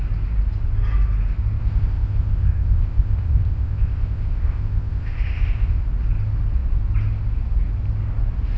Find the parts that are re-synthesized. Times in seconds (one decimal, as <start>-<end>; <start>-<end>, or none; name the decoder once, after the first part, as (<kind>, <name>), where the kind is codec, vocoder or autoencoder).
1.6-5.8 (codec, ZipCodec)